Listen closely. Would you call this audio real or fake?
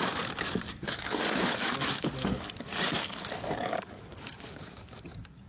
fake